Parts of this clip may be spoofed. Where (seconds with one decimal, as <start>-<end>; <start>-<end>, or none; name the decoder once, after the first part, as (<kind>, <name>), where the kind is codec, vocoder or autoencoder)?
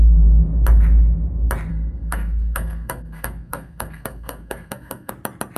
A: 1.7-5.1 (codec, SNAC)